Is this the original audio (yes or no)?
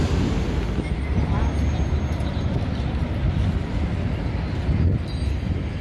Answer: yes